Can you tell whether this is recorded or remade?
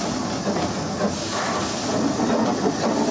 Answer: recorded